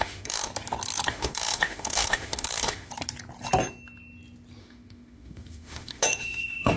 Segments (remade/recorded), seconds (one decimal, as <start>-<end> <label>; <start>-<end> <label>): 0.0-0.5 remade; 0.5-1.1 recorded; 1.1-2.9 remade; 2.9-4.6 recorded; 4.6-6.8 remade